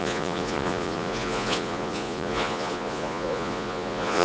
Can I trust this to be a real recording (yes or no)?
no